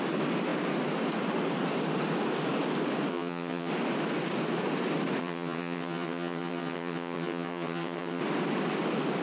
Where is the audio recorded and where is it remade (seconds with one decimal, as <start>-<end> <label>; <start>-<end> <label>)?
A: 0.0-3.1 recorded; 3.1-3.7 remade; 3.7-5.2 recorded; 5.2-8.2 remade; 8.2-9.2 recorded